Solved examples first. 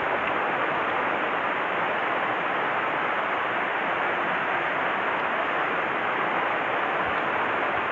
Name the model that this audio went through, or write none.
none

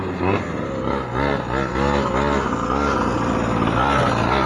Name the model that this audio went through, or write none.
none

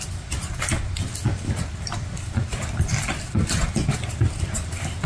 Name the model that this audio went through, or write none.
none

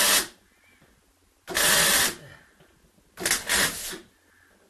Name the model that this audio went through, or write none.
none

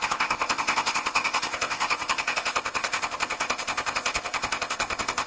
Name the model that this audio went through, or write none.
codec, ZipCodec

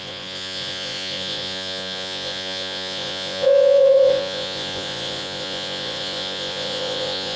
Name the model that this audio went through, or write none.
vocoder, Vocos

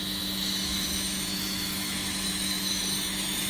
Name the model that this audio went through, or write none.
autoencoder, DAC-VAE